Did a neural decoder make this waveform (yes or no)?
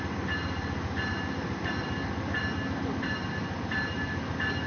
no